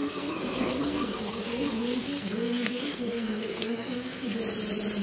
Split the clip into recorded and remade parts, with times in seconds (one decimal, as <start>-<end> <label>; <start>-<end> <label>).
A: 0.0-4.4 remade; 4.4-5.0 recorded